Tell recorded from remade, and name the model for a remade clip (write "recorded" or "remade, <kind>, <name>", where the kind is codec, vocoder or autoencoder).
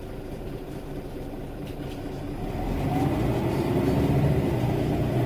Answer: remade, vocoder, BigVGAN v2